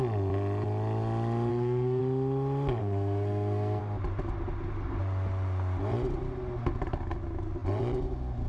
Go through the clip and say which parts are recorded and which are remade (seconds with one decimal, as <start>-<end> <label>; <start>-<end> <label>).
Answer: 0.0-1.5 recorded; 1.5-2.0 remade; 2.0-2.8 recorded; 2.8-3.8 remade; 3.8-8.5 recorded